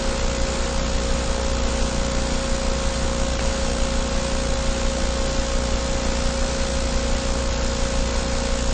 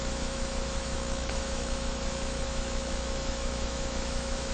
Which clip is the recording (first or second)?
first